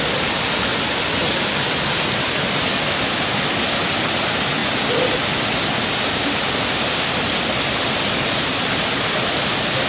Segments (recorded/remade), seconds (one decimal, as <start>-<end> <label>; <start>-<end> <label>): 0.0-9.9 recorded

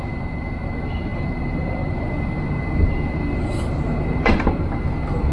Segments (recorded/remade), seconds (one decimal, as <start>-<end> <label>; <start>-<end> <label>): 0.0-5.3 remade

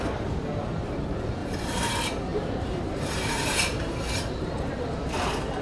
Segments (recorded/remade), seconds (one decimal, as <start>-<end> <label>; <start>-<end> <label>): 0.0-1.4 recorded; 1.4-1.9 remade; 1.9-2.3 recorded; 2.3-5.6 remade

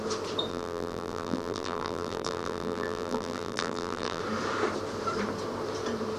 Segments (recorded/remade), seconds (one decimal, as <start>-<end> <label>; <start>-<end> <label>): 0.0-0.5 recorded; 0.5-4.2 remade; 4.2-6.2 recorded